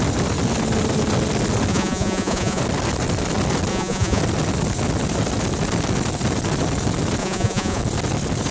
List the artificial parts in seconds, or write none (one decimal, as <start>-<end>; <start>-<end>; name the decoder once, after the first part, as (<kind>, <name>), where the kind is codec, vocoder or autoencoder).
1.7-2.6 (vocoder, Vocos); 3.7-4.2; 7.2-7.8